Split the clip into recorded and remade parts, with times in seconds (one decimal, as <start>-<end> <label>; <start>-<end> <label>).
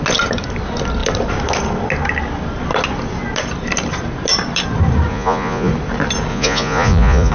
0.0-5.1 recorded; 5.1-5.7 remade; 5.7-6.3 recorded; 6.3-7.3 remade